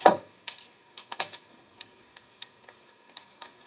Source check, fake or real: fake